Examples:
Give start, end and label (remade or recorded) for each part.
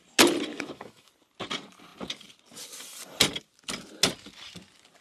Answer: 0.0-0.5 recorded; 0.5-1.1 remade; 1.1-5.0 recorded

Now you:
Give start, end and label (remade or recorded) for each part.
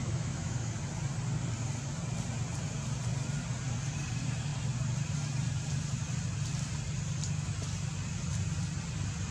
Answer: 0.0-0.7 remade; 0.7-9.3 recorded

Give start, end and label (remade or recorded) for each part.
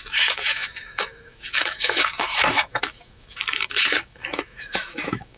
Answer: 0.0-5.4 remade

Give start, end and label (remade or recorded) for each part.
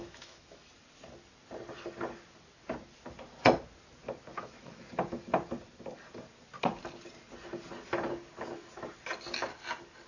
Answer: 0.0-0.7 remade; 0.7-4.3 recorded; 4.3-4.8 remade; 4.8-10.1 recorded